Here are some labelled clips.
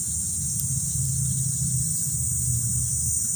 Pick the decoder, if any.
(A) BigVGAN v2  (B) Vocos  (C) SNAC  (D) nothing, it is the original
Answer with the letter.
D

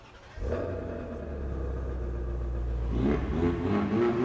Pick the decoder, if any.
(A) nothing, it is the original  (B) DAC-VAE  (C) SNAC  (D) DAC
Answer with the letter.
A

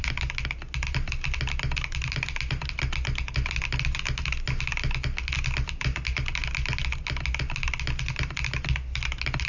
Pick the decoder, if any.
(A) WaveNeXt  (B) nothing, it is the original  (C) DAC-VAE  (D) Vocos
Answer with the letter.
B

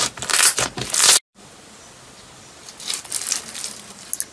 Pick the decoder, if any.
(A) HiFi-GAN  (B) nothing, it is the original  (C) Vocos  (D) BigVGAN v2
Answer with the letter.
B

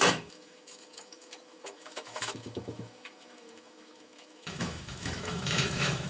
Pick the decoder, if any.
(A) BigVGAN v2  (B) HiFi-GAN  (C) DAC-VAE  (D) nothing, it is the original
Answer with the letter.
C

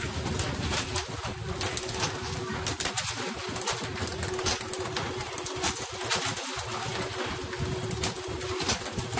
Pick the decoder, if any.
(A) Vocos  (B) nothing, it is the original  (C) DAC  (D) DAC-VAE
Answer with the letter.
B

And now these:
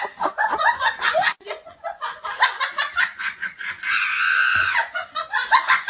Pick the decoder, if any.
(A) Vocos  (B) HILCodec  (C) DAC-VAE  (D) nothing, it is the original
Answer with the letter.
A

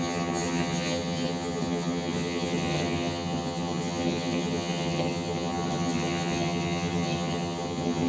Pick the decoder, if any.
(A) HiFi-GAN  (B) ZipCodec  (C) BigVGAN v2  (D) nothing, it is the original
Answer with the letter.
A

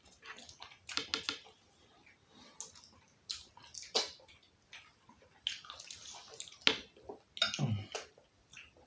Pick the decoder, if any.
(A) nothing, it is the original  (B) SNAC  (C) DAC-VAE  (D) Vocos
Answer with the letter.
A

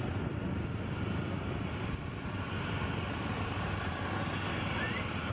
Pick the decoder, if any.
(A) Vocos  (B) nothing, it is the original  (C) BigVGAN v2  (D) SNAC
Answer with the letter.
B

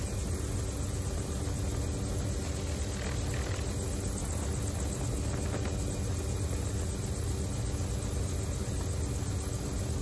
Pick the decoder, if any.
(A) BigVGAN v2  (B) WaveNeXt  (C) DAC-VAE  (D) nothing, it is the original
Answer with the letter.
D